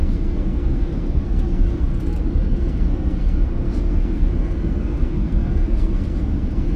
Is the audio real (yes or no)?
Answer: no